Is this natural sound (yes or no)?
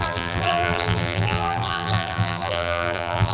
no